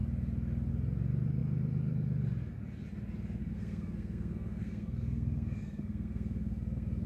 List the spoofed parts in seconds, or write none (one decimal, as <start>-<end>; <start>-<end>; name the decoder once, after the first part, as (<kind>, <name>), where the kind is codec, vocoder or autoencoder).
3.4-7.1 (codec, SNAC)